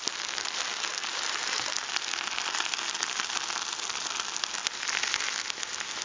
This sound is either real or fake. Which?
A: real